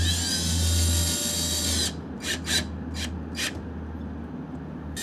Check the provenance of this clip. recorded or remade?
recorded